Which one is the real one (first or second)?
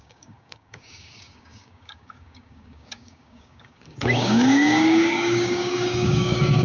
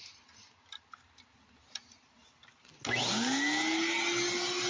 second